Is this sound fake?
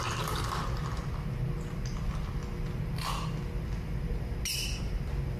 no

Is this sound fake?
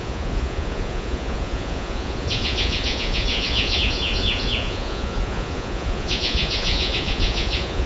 yes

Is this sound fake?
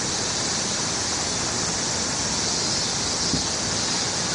no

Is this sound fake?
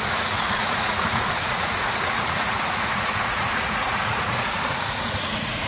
yes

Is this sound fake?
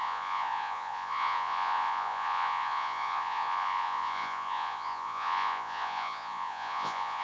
yes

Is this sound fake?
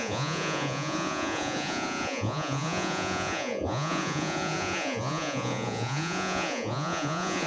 yes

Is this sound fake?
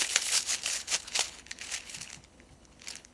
yes